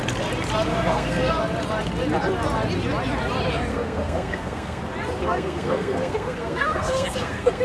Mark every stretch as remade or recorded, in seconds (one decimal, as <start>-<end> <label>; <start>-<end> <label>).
0.0-0.7 recorded; 0.7-1.3 remade; 1.3-3.7 recorded; 3.7-4.8 remade; 4.8-5.2 recorded; 5.2-7.6 remade